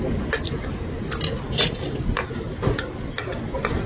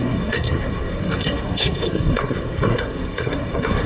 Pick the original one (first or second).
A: first